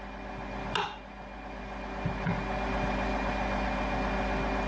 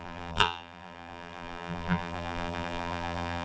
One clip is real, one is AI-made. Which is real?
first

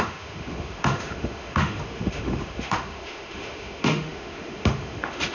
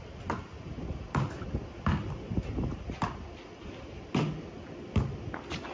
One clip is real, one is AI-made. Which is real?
second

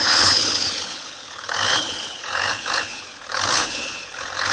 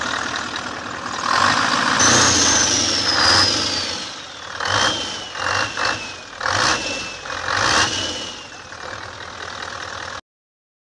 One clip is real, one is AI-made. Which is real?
second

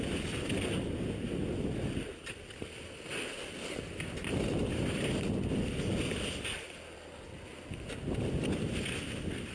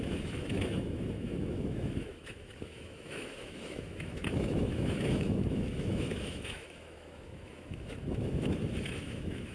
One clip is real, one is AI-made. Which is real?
first